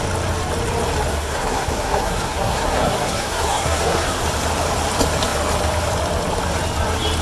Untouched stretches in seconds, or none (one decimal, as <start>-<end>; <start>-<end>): 0.0-1.1; 4.2-7.2